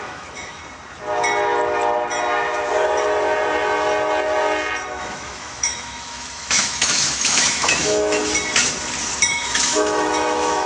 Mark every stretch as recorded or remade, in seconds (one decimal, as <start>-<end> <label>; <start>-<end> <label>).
0.0-0.6 remade; 0.6-5.0 recorded; 5.0-8.2 remade; 8.2-9.3 recorded; 9.3-10.7 remade